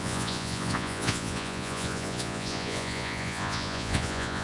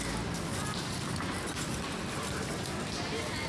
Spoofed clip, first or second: first